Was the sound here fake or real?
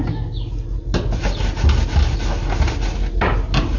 real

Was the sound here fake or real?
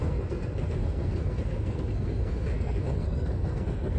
fake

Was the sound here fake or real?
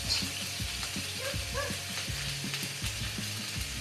real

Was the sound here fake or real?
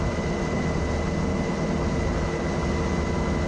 real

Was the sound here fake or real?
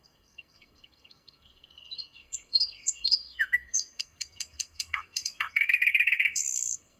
fake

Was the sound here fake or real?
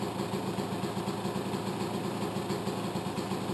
real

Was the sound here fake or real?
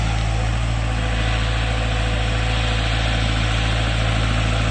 real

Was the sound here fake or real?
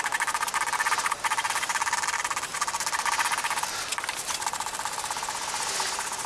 real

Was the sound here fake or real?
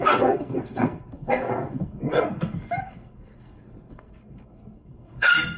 fake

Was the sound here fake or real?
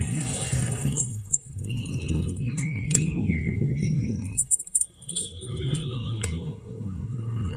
fake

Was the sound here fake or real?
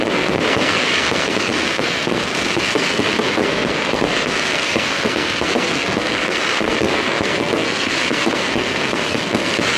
fake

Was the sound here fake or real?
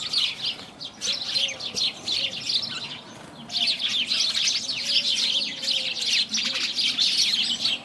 real